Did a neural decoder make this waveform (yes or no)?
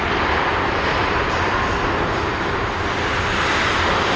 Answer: no